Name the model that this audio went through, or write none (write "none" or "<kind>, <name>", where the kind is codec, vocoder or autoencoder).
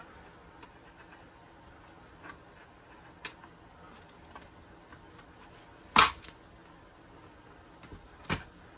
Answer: none